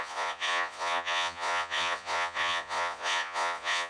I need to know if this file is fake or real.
fake